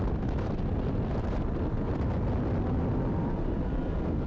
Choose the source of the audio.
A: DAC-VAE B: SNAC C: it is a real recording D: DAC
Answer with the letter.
C